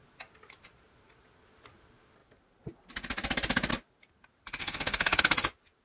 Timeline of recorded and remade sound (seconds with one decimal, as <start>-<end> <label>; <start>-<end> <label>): 0.0-4.6 recorded; 4.6-5.2 remade; 5.2-5.8 recorded